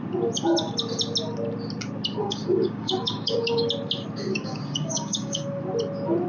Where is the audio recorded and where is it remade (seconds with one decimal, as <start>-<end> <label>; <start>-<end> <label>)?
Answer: 0.0-2.2 recorded; 2.2-3.7 remade; 3.7-4.3 recorded; 4.3-5.6 remade; 5.6-6.3 recorded